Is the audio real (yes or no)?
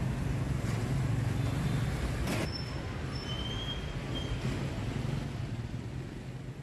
yes